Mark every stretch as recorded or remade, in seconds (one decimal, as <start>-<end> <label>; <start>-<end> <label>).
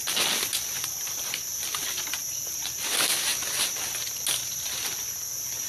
0.0-5.7 recorded